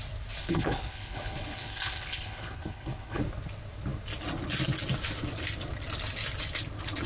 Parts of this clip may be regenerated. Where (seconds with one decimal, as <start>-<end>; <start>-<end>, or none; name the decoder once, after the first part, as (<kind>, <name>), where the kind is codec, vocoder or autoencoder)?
0.4-3.2 (codec, HILCodec)